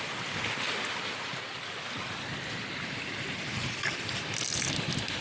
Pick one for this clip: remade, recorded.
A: recorded